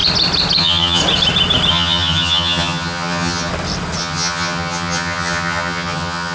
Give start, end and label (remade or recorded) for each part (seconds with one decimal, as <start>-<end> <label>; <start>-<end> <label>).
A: 0.0-0.6 recorded; 0.6-1.0 remade; 1.0-1.7 recorded; 1.7-3.5 remade; 3.5-4.0 recorded; 4.0-6.3 remade